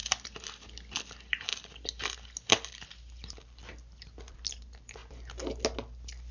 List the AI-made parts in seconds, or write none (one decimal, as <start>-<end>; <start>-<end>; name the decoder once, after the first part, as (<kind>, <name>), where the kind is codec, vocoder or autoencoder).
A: none